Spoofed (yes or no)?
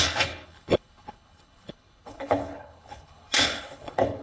yes